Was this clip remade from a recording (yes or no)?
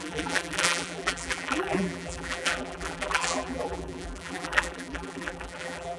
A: yes